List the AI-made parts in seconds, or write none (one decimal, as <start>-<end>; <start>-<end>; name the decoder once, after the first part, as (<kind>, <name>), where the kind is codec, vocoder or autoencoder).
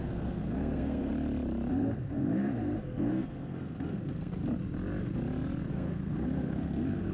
0.0-1.1 (codec, SNAC); 1.7-4.3; 5.7-7.1